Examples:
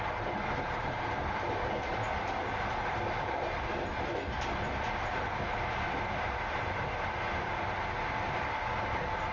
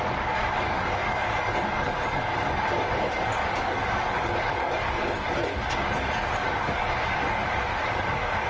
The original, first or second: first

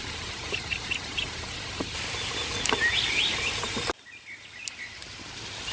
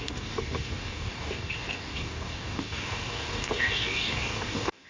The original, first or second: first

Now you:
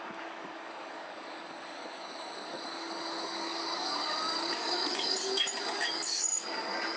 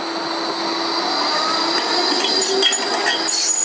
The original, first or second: second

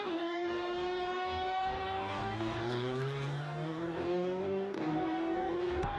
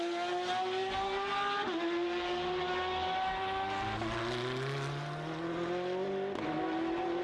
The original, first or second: second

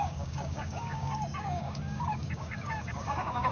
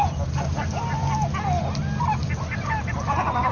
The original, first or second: second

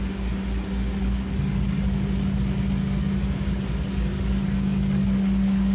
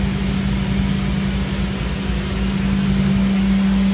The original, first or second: second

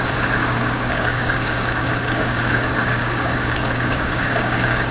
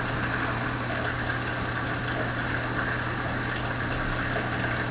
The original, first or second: second